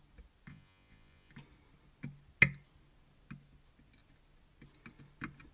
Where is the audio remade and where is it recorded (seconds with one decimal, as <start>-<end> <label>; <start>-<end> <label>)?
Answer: 0.0-0.5 recorded; 0.5-1.3 remade; 1.3-5.5 recorded

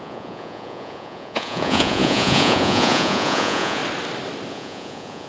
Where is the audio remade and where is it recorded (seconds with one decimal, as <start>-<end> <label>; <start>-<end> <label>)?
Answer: 0.0-3.8 remade; 3.8-4.5 recorded; 4.5-5.3 remade

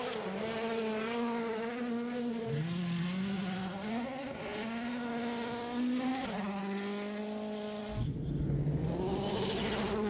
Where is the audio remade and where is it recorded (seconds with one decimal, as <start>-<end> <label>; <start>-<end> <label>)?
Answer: 0.0-10.1 recorded